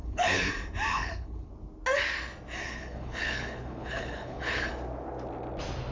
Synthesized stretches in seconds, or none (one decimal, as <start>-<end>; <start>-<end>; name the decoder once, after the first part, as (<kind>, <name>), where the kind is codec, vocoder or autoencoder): 0.0-0.5 (codec, HILCodec); 0.9-1.5; 2.6-4.7